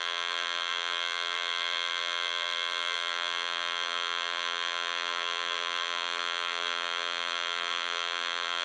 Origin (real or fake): fake